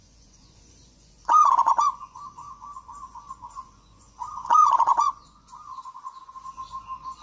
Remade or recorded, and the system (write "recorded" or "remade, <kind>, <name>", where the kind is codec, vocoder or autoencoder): remade, vocoder, Vocos